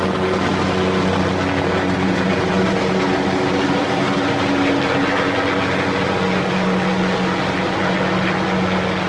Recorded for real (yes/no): yes